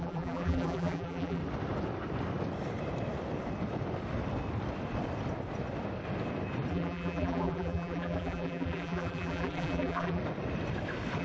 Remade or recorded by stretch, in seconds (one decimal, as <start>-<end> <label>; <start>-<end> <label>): 0.0-1.4 remade; 1.4-6.7 recorded; 6.7-10.2 remade; 10.2-11.2 recorded